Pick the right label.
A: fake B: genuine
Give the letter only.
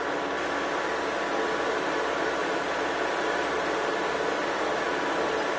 B